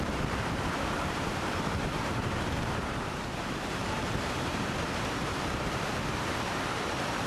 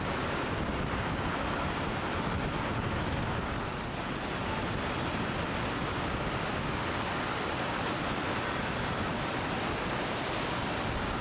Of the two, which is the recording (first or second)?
second